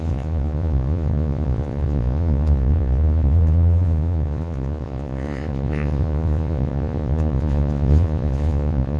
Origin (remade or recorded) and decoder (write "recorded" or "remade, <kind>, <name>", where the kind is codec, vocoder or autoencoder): remade, vocoder, Vocos